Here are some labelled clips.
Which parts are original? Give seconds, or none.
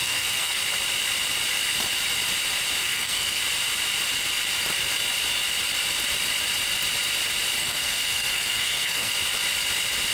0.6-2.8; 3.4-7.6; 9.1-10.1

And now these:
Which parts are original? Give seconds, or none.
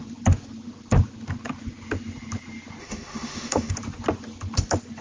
0.0-2.8; 3.7-5.0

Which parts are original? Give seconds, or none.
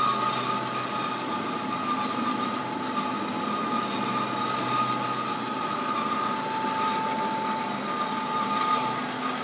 0.0-9.4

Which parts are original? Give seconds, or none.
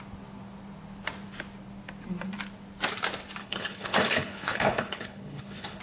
0.0-3.4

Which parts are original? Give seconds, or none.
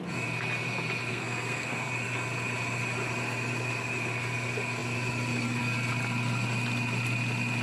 0.0-1.1; 1.9-7.6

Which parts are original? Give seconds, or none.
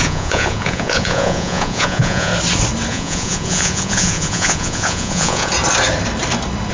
2.3-2.9; 5.5-6.7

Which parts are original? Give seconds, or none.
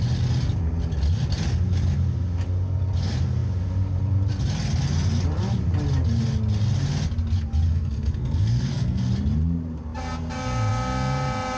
0.0-7.7; 9.1-11.6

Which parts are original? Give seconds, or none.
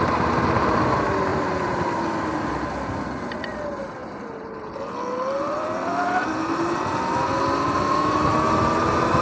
0.0-1.3; 2.0-9.2